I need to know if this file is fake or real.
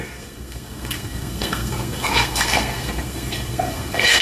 fake